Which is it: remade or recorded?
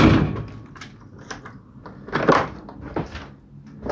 recorded